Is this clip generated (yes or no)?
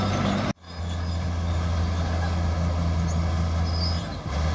no